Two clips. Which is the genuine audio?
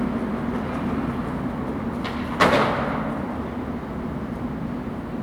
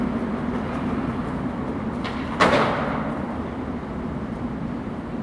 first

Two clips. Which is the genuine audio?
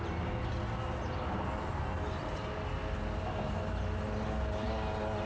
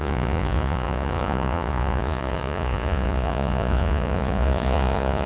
first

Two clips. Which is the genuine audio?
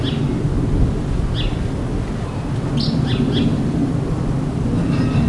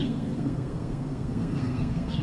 first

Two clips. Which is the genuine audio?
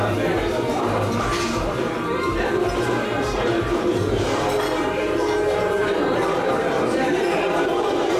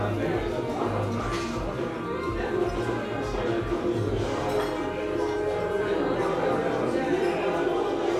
second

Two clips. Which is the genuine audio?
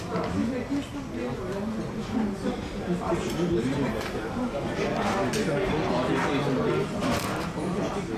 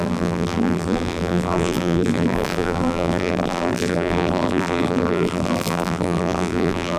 first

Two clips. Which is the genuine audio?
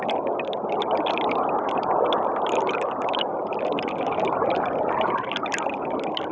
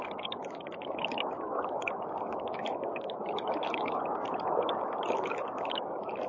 first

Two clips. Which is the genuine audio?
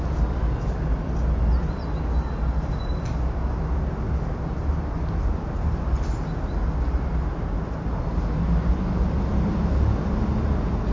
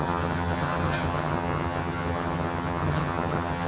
first